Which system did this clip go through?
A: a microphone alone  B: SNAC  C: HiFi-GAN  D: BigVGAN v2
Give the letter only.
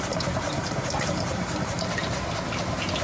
D